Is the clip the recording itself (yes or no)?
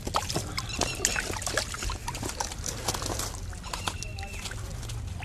yes